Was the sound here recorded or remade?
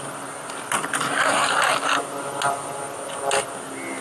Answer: recorded